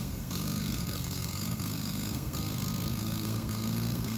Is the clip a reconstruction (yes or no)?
yes